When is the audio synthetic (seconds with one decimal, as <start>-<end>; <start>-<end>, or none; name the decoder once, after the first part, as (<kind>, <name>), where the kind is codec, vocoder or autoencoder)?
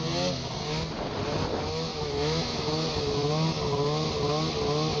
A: 1.9-3.3 (autoencoder, DAC-VAE)